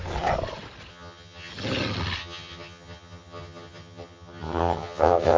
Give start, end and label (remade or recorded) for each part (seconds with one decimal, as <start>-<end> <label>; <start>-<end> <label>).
0.0-0.9 recorded; 0.9-1.5 remade; 1.5-2.2 recorded; 2.2-5.4 remade